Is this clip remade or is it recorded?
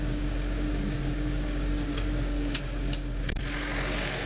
remade